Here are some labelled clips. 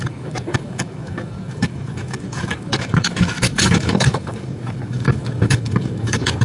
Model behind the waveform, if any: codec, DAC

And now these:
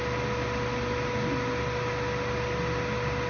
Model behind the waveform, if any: none